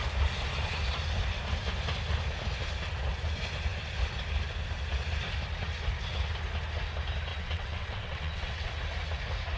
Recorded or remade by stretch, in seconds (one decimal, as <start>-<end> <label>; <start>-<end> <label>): 0.0-7.3 recorded; 7.3-8.7 remade; 8.7-9.6 recorded